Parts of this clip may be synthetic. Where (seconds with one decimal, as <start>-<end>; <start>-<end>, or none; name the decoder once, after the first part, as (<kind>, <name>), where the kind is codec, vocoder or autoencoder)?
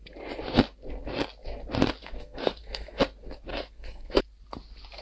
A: 2.0-3.0 (codec, SNAC); 3.5-4.2